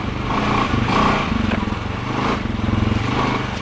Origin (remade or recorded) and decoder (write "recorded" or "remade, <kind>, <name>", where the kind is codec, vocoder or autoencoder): recorded